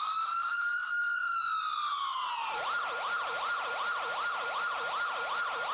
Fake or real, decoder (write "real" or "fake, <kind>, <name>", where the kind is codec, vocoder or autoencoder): real